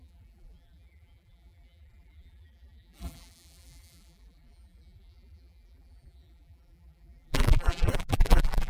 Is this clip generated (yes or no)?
yes